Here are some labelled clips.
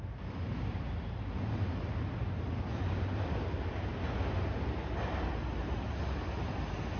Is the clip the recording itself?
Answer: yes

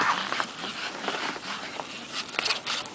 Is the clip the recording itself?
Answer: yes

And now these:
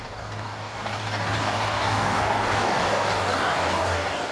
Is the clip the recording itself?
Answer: no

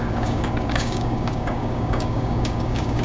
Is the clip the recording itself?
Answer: no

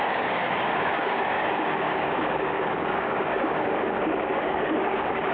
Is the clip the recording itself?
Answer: no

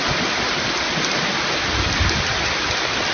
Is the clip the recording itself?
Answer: yes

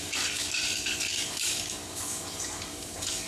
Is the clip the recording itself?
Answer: no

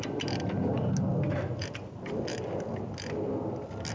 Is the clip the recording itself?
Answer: yes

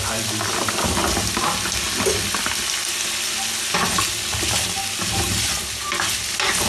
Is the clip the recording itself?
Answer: yes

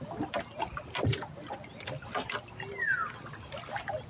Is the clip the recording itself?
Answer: yes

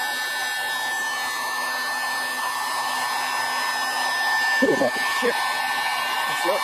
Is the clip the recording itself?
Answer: yes